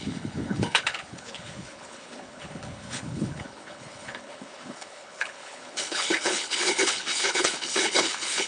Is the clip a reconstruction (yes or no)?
yes